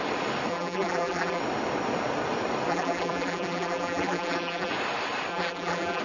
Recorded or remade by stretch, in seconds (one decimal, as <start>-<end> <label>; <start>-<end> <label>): 0.0-0.5 recorded; 0.5-1.4 remade; 1.4-2.7 recorded; 2.7-4.7 remade; 4.7-5.3 recorded; 5.3-6.0 remade